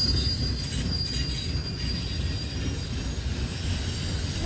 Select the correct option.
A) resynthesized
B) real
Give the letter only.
B